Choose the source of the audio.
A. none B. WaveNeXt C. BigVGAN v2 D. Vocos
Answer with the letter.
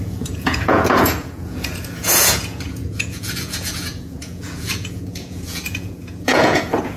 D